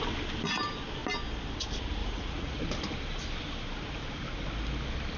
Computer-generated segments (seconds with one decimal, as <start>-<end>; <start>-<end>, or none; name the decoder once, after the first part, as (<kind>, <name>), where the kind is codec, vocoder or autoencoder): 2.0-2.6 (vocoder, Vocos)

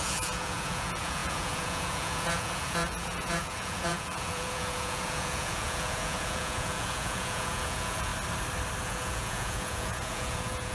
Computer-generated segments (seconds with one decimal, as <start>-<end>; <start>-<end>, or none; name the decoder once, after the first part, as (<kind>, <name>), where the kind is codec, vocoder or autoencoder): 0.0-8.1 (vocoder, Vocos); 8.8-10.7

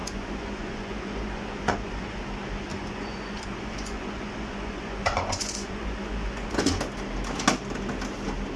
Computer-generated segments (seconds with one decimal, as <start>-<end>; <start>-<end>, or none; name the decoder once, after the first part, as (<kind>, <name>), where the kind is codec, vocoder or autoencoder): 0.0-2.2 (vocoder, Vocos); 2.7-6.8

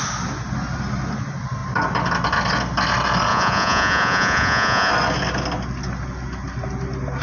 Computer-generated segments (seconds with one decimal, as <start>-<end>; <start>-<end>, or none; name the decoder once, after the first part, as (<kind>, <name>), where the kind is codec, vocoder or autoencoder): 3.3-4.9 (vocoder, Vocos)